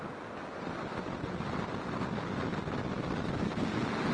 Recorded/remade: recorded